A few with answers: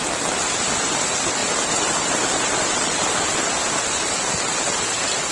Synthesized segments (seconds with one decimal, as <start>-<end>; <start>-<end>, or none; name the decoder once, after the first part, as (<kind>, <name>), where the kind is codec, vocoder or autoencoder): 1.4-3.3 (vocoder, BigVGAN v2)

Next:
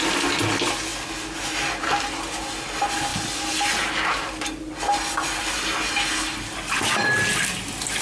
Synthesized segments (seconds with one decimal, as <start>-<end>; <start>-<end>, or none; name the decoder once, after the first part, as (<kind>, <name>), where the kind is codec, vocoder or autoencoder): none

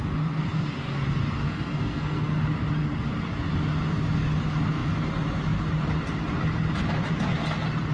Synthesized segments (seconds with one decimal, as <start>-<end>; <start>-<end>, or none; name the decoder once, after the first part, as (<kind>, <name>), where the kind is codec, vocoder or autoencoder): 1.4-2.4 (codec, SNAC)